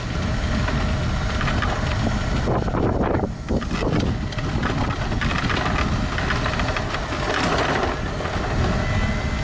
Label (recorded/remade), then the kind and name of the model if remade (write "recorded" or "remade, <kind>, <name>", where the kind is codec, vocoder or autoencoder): recorded